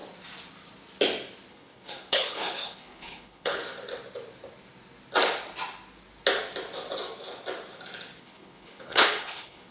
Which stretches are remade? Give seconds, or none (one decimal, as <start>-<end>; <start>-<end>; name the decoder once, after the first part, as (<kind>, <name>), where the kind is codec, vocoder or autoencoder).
1.5-3.6 (codec, HILCodec); 8.2-9.7